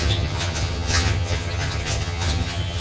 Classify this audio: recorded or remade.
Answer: remade